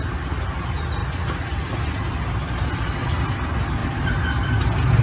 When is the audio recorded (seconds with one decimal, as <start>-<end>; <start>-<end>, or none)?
0.0-5.0